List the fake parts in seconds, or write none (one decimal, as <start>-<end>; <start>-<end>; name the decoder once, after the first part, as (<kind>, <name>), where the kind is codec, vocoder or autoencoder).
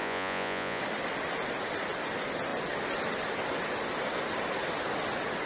0.0-0.8 (vocoder, Vocos)